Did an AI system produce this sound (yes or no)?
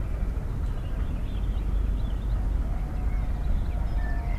no